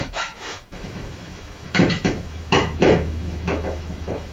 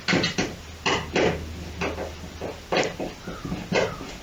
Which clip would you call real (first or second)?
second